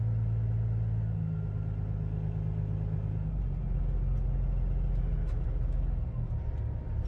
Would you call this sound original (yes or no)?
yes